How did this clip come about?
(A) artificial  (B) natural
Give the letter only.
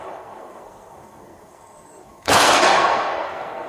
A